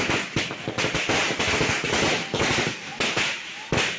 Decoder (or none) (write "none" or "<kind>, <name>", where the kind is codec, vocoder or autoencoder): none